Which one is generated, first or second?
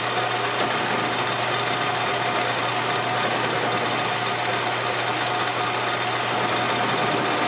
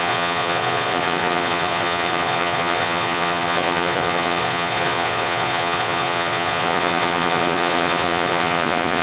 second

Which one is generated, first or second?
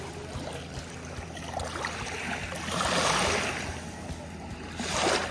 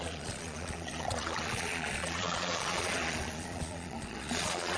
second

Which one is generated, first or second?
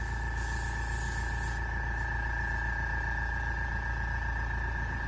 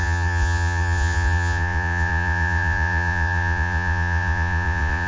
second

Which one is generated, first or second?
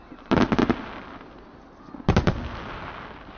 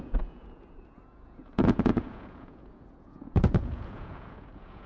second